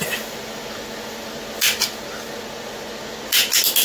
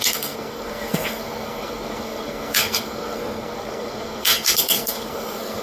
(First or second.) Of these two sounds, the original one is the first